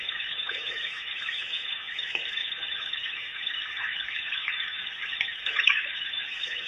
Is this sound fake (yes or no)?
yes